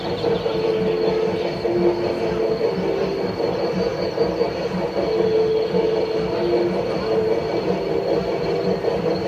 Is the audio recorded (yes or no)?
yes